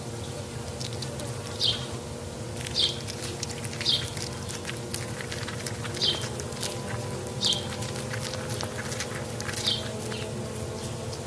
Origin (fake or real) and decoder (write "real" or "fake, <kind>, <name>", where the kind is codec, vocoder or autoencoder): real